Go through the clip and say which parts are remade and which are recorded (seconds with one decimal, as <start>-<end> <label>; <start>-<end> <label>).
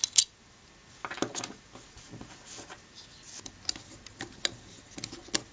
0.0-5.5 recorded